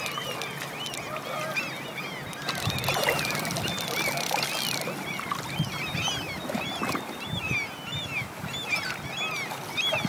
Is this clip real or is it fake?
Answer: real